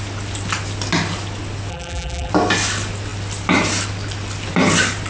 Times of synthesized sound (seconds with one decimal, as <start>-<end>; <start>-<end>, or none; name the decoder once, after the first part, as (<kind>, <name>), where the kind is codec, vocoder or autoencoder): 1.7-2.3 (vocoder, BigVGAN v2)